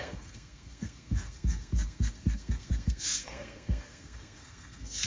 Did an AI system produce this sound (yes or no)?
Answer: yes